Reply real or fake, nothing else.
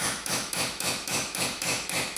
fake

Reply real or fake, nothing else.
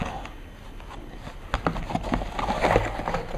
real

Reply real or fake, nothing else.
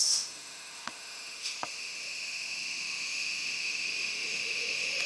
fake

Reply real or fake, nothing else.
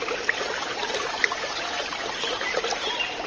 real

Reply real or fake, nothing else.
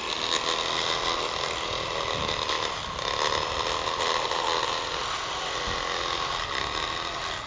real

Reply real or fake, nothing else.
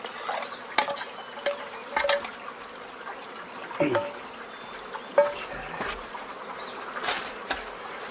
real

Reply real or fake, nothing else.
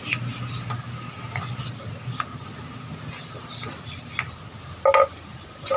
real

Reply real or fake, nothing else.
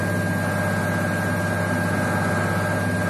real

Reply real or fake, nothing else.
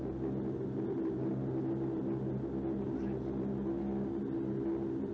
real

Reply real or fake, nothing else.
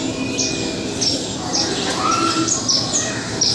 real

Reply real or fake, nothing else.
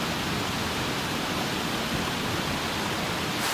real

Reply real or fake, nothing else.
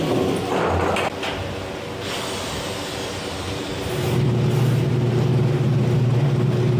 real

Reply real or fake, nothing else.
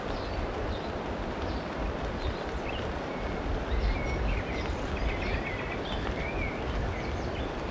real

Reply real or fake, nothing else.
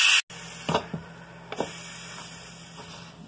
real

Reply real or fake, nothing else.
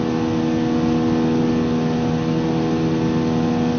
real